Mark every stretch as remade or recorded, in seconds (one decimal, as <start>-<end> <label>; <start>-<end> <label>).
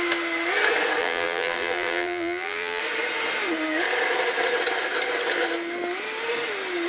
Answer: 0.0-1.0 recorded; 1.0-2.8 remade; 2.8-6.9 recorded